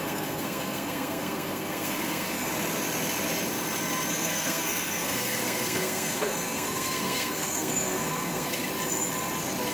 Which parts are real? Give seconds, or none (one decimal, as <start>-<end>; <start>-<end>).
2.5-4.1; 8.7-9.7